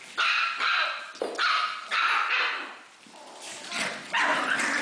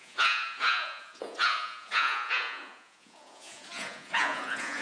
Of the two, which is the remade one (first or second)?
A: second